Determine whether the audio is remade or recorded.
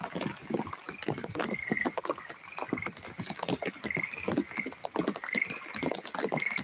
recorded